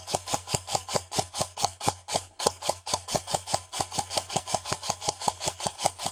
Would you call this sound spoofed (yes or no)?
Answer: yes